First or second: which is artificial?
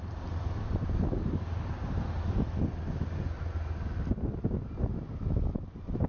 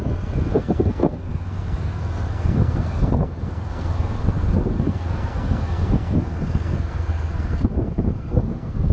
second